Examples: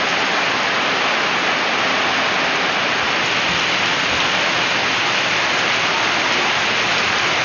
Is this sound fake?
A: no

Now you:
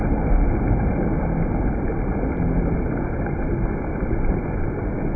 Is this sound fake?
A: no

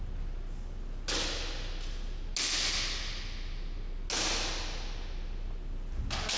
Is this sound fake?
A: no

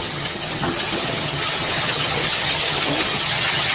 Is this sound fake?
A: yes